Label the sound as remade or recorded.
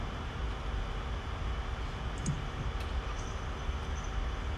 recorded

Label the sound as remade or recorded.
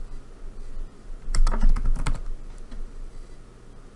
recorded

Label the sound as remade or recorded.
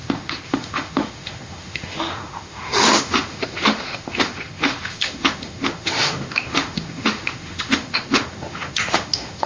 remade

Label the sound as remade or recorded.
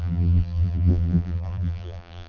remade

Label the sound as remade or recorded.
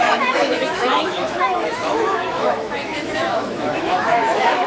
remade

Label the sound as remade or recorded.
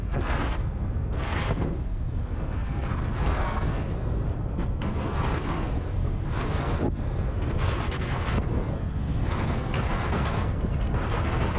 remade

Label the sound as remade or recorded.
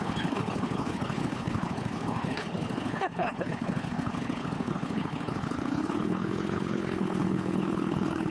remade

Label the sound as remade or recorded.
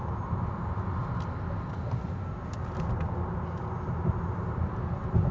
recorded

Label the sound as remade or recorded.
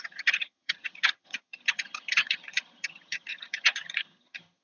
remade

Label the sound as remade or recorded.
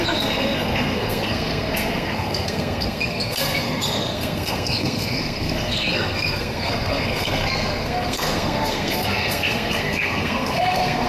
remade